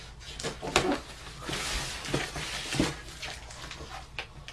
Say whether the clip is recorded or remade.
recorded